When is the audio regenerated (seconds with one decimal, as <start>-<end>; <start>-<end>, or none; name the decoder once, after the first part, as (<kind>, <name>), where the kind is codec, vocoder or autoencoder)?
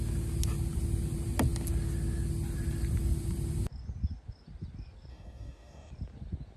5.1-5.9 (codec, DAC)